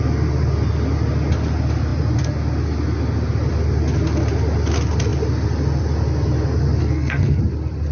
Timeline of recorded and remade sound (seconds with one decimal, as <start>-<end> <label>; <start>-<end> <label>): 0.0-6.8 recorded; 6.8-7.4 remade; 7.4-7.9 recorded